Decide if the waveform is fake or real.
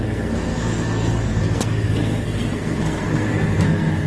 fake